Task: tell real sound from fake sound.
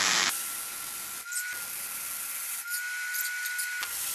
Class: real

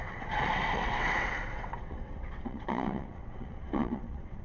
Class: fake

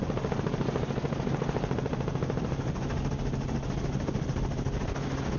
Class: real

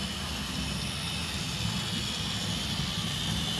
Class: real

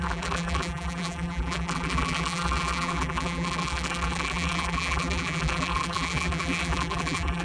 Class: fake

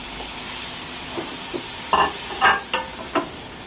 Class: real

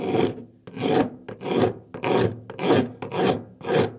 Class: real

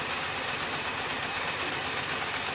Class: real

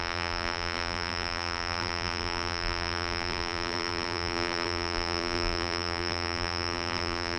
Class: fake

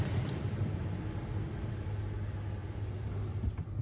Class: fake